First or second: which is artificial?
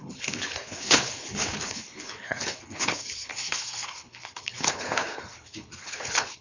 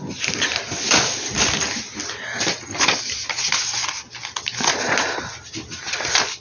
first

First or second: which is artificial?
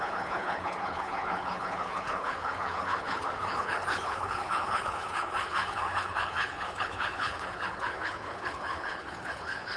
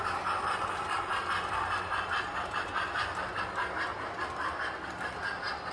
first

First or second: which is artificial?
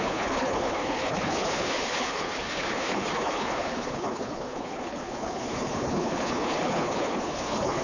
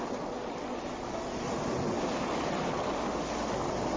first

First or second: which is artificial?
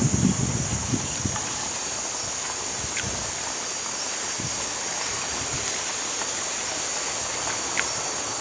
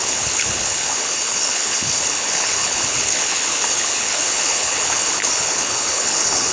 second